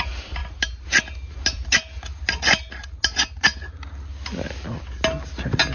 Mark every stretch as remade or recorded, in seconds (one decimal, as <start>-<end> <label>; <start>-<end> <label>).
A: 0.0-5.7 recorded